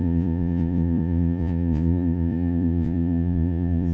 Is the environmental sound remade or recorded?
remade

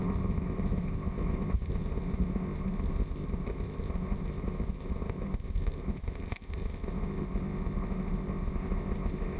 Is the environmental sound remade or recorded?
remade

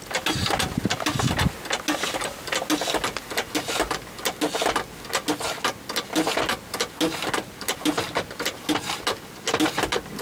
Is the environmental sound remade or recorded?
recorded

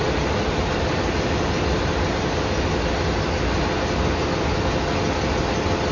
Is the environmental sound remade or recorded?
recorded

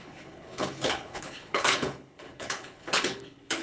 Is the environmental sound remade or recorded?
remade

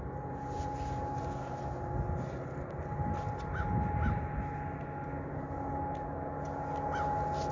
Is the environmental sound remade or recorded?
recorded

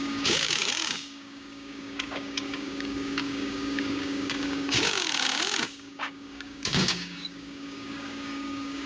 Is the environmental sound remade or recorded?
remade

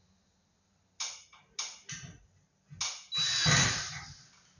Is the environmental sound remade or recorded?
recorded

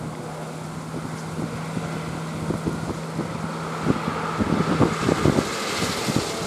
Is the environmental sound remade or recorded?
recorded